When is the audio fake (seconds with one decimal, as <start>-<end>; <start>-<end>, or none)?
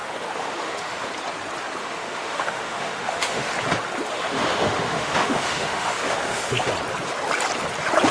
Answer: 0.0-1.1; 1.8-3.5; 4.1-6.7